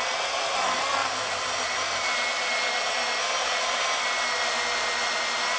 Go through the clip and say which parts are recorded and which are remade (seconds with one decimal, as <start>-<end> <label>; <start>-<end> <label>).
0.0-5.6 recorded